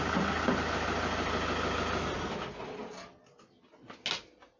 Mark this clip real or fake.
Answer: real